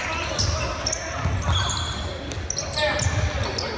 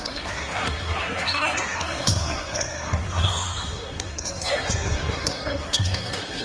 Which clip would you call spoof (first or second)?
second